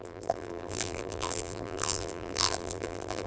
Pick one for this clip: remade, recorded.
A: remade